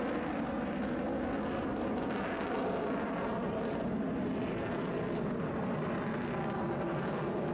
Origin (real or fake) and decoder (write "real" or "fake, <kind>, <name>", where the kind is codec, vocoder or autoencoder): real